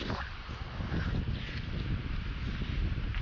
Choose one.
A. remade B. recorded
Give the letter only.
B